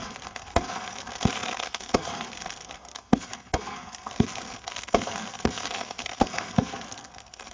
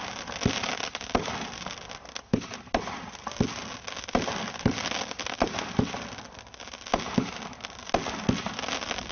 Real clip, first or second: second